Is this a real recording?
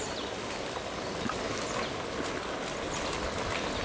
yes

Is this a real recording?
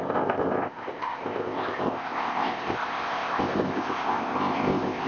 no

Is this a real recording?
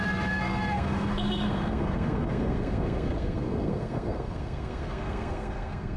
no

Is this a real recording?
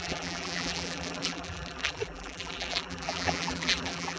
no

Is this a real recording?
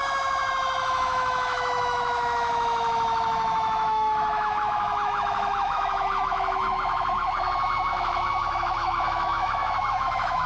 no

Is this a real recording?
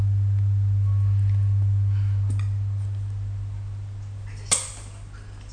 yes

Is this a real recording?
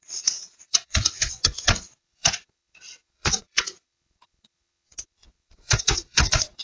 no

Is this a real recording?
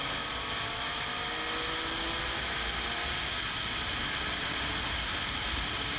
yes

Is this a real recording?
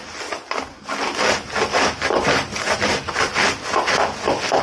yes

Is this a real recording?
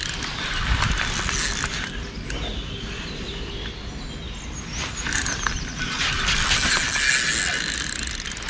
yes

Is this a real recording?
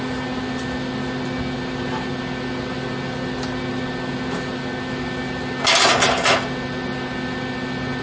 yes